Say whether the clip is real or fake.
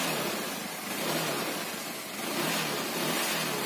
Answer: real